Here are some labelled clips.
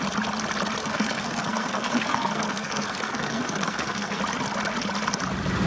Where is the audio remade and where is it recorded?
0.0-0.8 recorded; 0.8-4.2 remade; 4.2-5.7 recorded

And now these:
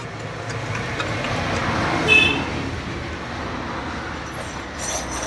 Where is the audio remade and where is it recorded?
0.0-5.3 recorded

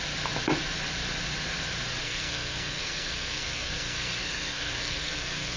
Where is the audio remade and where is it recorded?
0.0-2.0 recorded; 2.0-5.6 remade